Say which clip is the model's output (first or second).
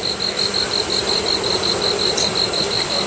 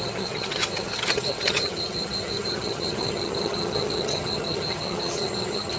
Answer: second